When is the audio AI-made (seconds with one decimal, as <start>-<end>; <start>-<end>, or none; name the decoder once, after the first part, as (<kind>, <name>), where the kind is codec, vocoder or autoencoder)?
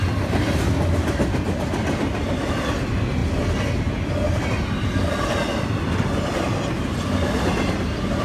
none